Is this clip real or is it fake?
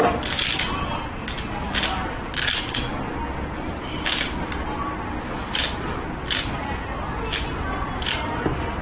real